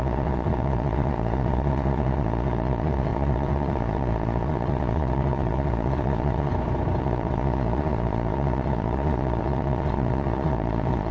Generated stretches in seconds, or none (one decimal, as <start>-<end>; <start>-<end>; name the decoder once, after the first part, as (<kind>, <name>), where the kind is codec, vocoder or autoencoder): 0.0-6.5 (vocoder, Vocos); 7.0-11.1